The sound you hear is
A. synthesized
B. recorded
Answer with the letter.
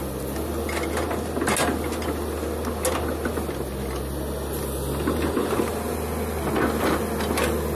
B